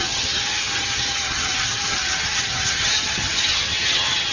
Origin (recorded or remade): remade